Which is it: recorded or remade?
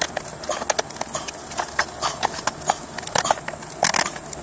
recorded